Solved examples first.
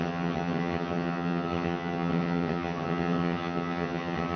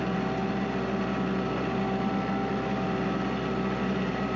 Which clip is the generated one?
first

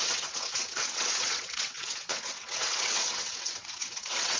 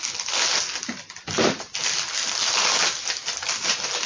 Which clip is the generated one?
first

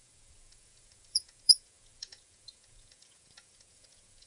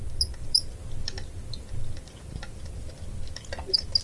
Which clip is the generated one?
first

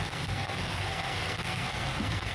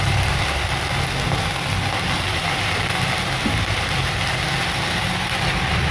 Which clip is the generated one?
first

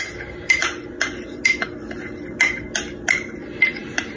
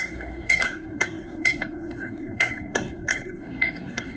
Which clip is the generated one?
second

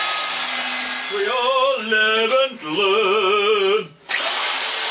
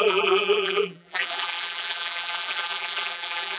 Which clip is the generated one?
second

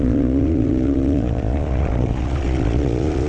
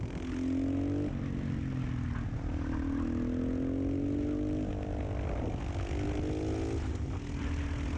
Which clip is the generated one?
first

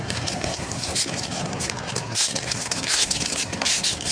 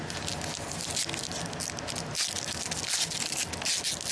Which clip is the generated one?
first